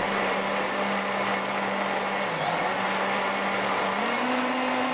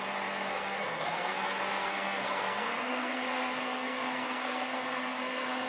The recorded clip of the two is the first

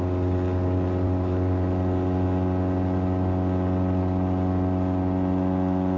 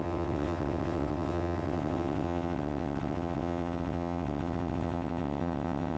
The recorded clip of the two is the first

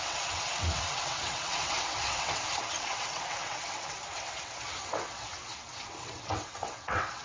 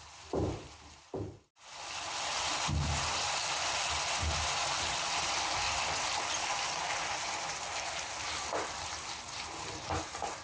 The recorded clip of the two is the second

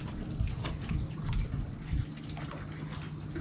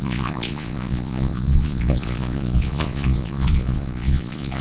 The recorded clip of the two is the first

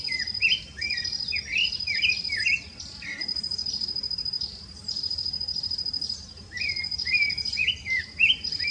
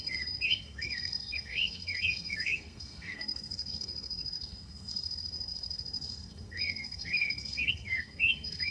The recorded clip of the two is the first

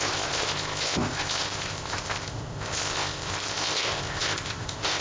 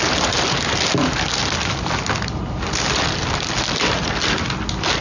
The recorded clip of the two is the second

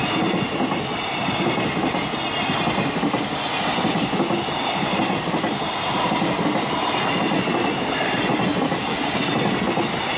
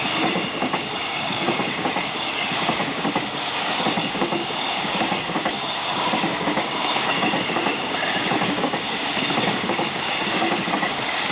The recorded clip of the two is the first